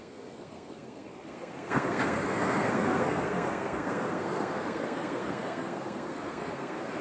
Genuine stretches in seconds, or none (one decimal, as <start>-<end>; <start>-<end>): none